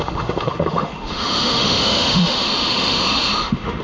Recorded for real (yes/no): no